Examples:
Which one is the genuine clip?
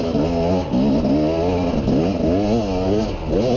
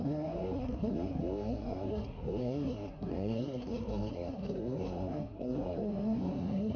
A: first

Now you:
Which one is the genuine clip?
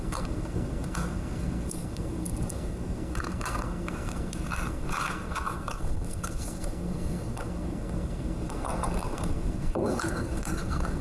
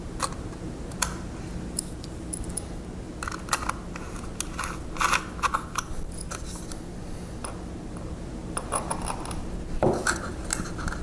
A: second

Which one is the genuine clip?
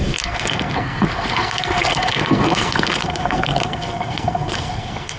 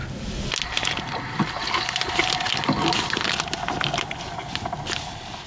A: second